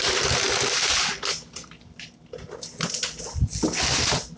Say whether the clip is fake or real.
real